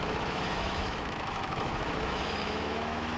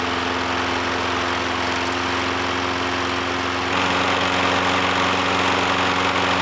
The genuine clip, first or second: second